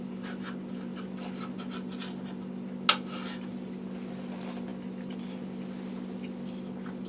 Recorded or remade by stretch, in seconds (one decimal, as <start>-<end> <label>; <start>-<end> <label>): 0.0-7.1 recorded